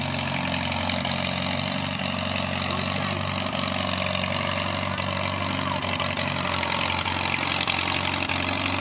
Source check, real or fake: real